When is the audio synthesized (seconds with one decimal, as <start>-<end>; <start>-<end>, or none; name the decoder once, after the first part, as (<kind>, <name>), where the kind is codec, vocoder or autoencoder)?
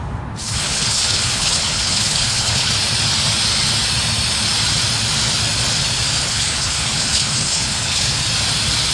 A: 0.4-2.7 (codec, HILCodec); 6.2-8.2